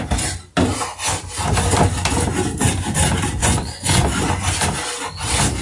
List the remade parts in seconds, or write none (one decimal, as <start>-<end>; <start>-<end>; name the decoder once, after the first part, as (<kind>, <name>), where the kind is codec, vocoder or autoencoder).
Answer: 3.4-4.2 (vocoder, Vocos)